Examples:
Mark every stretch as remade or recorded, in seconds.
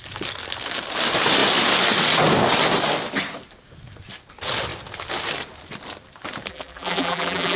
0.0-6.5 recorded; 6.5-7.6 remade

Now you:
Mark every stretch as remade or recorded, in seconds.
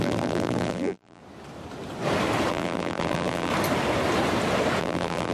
0.0-1.2 remade; 1.2-2.5 recorded; 2.5-3.5 remade; 3.5-4.8 recorded; 4.8-5.3 remade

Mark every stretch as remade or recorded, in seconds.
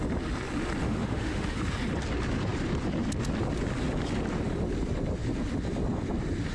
0.0-0.8 recorded; 0.8-1.6 remade; 1.6-6.5 recorded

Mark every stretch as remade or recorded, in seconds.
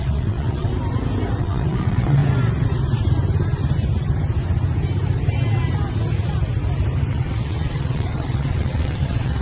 0.0-0.7 remade; 0.7-1.4 recorded; 1.4-2.2 remade; 2.2-7.1 recorded; 7.1-9.4 remade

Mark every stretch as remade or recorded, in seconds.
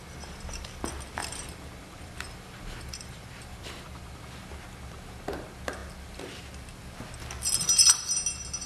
0.0-1.2 recorded; 1.2-4.2 remade; 4.2-8.7 recorded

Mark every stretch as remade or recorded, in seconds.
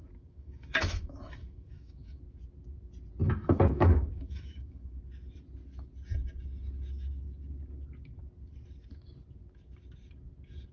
0.0-2.2 remade; 2.2-3.2 recorded; 3.2-5.0 remade; 5.0-10.7 recorded